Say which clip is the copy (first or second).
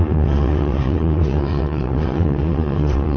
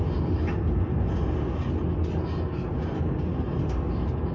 first